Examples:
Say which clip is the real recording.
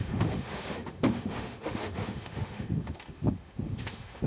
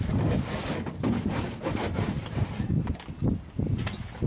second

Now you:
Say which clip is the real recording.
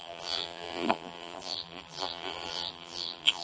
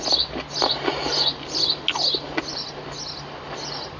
second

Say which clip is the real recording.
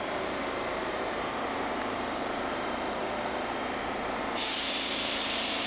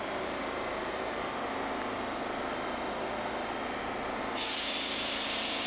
second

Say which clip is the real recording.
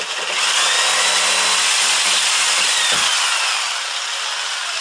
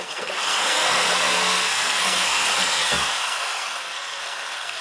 first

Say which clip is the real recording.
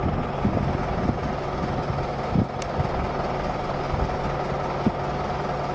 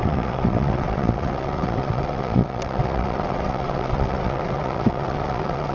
first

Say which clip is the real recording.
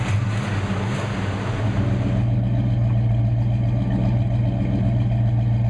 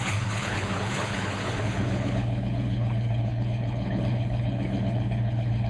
first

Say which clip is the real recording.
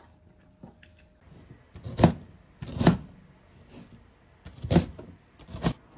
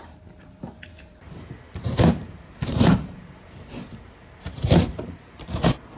first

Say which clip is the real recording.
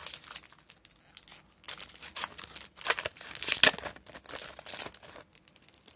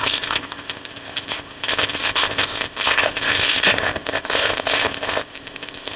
first